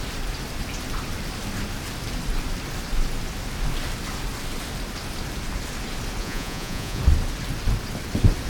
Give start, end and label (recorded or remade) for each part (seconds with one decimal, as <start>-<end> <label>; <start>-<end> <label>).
0.0-6.2 recorded; 6.2-7.0 remade; 7.0-8.5 recorded